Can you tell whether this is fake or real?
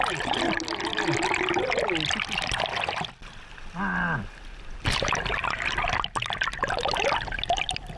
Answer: real